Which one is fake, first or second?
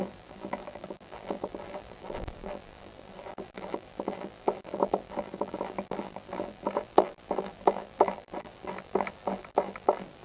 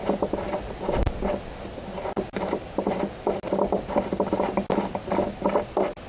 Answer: first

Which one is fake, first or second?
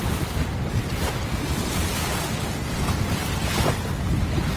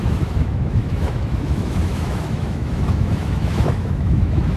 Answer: second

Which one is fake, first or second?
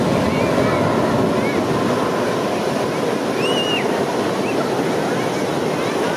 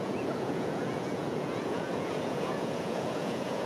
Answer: second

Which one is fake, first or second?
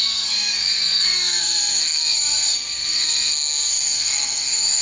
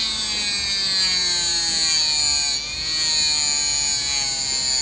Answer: first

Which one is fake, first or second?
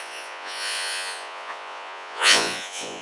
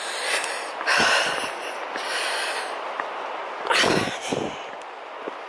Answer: first